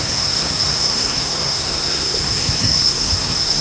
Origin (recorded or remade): remade